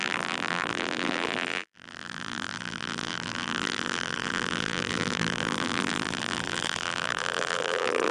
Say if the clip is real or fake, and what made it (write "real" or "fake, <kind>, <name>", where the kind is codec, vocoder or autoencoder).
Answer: fake, vocoder, BigVGAN v2